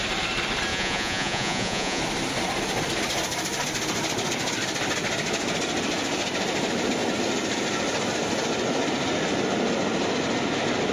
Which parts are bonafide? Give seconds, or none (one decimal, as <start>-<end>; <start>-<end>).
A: 0.0-0.7; 2.0-10.9